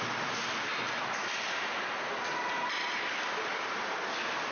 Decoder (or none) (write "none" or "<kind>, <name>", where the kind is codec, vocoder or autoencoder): none